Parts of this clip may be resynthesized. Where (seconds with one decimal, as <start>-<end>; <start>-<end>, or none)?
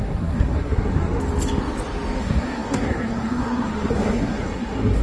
0.0-1.2; 2.2-5.0